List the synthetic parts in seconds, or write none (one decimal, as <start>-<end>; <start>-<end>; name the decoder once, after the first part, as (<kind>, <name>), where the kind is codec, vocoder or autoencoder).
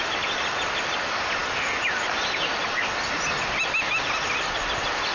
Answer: none